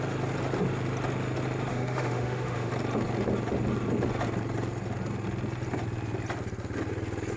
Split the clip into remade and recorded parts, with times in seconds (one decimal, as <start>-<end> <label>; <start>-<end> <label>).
0.0-1.7 recorded; 1.7-2.7 remade; 2.7-7.4 recorded